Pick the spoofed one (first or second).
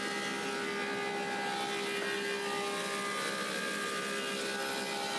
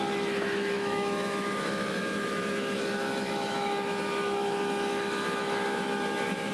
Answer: second